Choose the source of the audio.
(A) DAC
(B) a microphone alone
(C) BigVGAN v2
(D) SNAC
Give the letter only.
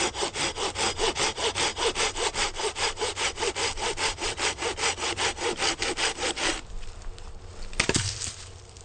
B